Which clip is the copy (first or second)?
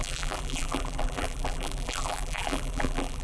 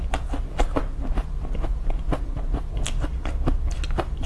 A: first